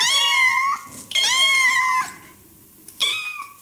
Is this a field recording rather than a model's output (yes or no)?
yes